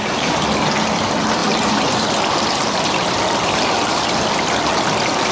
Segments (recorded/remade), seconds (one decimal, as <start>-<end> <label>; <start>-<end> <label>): 0.0-1.4 recorded; 1.4-4.6 remade; 4.6-5.3 recorded